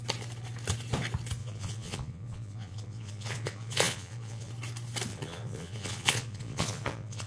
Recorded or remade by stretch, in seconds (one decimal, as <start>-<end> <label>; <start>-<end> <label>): 0.0-1.4 recorded; 1.4-4.5 remade; 4.5-5.1 recorded; 5.1-7.3 remade